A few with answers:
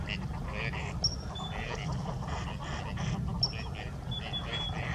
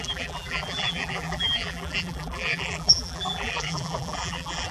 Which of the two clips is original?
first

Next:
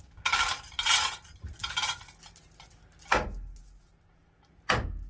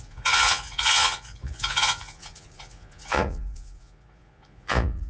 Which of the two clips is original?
first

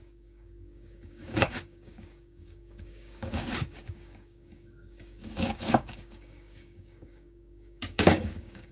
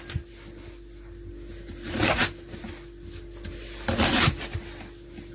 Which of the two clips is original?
second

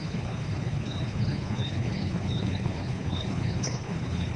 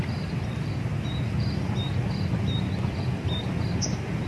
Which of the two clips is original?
second